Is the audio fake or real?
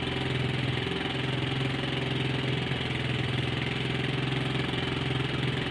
real